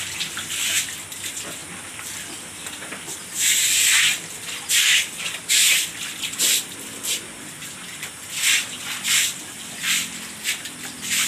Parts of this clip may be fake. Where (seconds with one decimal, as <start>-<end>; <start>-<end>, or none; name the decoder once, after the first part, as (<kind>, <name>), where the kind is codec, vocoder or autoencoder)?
4.8-5.5 (codec, DAC)